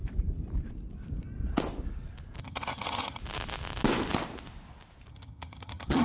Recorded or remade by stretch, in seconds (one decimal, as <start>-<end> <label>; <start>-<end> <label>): 0.0-2.4 recorded; 2.4-3.2 remade; 3.2-5.1 recorded; 5.1-6.0 remade